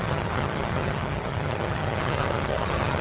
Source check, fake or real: fake